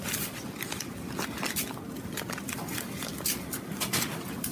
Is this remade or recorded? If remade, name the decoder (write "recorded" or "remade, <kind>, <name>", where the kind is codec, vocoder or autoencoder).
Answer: recorded